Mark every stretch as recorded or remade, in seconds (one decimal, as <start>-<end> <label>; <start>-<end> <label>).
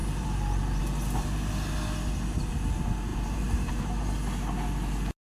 0.0-0.8 remade; 0.8-3.1 recorded; 3.1-3.7 remade; 3.7-5.3 recorded